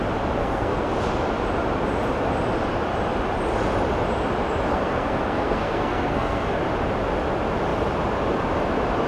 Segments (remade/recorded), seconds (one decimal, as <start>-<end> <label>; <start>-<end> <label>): 0.0-0.4 recorded; 0.4-0.9 remade; 0.9-4.7 recorded; 4.7-6.6 remade; 6.6-9.1 recorded